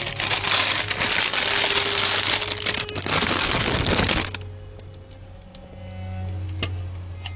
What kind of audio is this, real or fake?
real